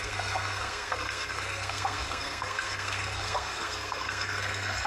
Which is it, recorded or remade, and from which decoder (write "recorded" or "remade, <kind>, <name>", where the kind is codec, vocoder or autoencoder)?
remade, codec, SNAC